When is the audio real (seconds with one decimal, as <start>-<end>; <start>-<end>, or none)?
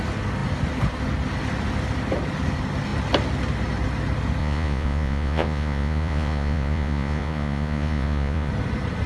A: 0.0-4.4; 8.5-9.1